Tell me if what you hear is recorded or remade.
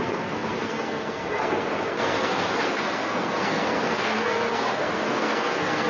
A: remade